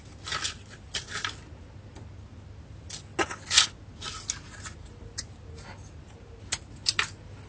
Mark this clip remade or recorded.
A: recorded